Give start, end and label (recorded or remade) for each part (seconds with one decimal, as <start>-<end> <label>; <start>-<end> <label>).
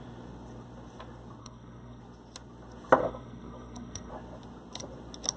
0.0-1.4 recorded; 1.4-2.0 remade; 2.0-3.0 recorded; 3.0-4.1 remade; 4.1-5.4 recorded